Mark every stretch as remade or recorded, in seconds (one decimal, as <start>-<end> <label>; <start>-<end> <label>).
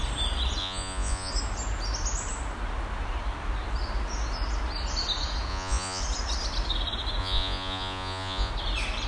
0.0-0.6 recorded; 0.6-1.3 remade; 1.3-5.5 recorded; 5.5-6.0 remade; 6.0-7.2 recorded; 7.2-8.5 remade; 8.5-9.1 recorded